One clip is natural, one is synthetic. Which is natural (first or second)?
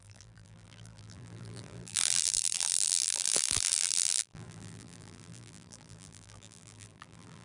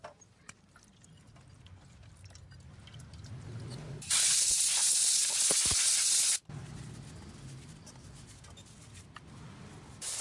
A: second